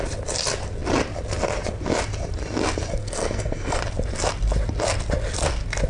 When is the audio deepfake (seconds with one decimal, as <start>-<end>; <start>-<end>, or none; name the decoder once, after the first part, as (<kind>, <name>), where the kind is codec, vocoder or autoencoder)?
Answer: 3.0-3.8 (codec, SNAC)